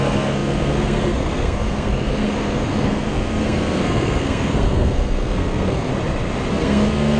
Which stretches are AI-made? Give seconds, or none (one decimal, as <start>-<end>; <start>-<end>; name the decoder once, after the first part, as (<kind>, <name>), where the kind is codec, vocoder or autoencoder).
0.0-5.9 (codec, SNAC); 6.5-7.2

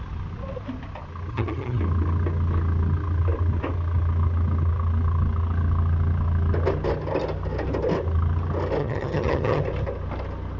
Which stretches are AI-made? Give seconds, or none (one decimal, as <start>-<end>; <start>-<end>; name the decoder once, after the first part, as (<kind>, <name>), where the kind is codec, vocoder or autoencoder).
1.3-1.8 (vocoder, HiFi-GAN); 8.8-9.6

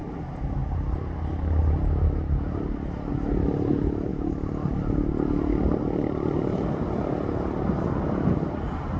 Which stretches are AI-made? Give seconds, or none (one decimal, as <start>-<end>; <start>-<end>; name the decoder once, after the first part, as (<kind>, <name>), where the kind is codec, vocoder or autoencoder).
none

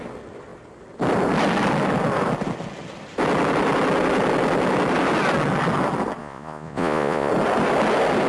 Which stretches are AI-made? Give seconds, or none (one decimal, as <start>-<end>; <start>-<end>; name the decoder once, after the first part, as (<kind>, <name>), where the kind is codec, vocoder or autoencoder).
6.2-7.3 (vocoder, Vocos)

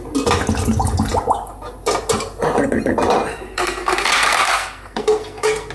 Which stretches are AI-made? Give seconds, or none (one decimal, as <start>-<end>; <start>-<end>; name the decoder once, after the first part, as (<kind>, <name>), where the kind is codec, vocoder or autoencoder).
3.3-5.7 (codec, SNAC)

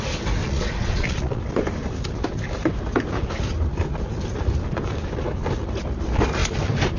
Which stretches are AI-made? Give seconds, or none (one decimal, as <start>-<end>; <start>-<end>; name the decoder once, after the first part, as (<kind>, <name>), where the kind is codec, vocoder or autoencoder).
0.4-1.4 (vocoder, Vocos)

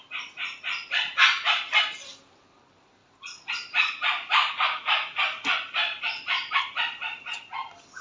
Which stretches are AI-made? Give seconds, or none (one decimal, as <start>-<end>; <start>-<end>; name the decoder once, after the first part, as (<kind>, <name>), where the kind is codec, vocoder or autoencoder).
0.0-1.8 (vocoder, BigVGAN v2); 3.0-6.6